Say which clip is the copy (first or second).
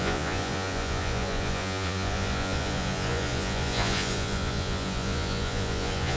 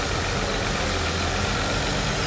first